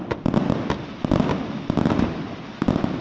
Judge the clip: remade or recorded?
recorded